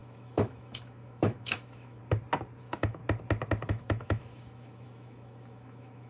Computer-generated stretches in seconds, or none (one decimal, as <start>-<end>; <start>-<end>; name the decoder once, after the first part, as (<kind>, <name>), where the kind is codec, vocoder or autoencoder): 0.0-2.0 (autoencoder, DAC-VAE); 2.6-3.0; 3.7-6.1